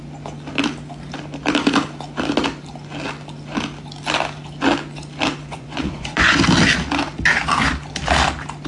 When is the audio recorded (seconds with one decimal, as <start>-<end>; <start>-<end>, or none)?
0.0-5.5; 6.4-8.7